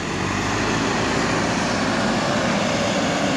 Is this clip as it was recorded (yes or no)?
yes